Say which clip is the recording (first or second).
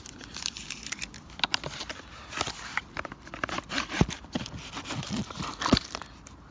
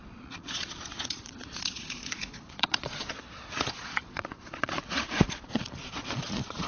first